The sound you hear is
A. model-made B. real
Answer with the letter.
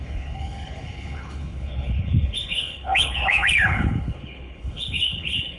A